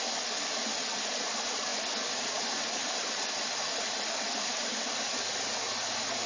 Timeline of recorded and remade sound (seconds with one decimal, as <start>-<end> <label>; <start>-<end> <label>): 0.0-1.7 recorded; 1.7-3.8 remade; 3.8-4.5 recorded; 4.5-5.6 remade; 5.6-6.3 recorded